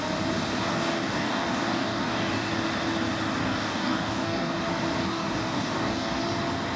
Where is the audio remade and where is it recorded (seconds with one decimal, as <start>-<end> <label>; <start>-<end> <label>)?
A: 0.0-0.7 recorded; 0.7-2.5 remade; 2.5-3.4 recorded; 3.4-4.6 remade; 4.6-5.0 recorded; 5.0-6.2 remade; 6.2-6.8 recorded